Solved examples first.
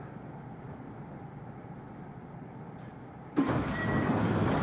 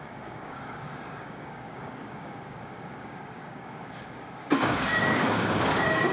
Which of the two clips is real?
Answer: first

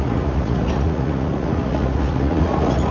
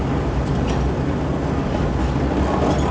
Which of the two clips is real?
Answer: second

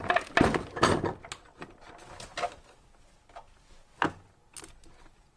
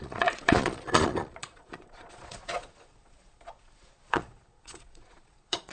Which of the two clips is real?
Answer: first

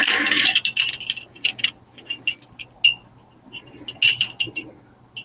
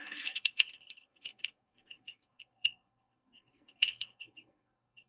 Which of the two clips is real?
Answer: first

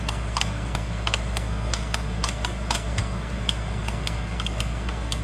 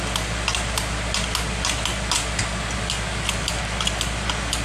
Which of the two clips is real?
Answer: second